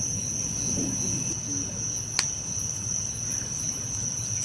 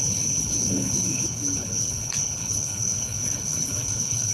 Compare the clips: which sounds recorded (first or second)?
first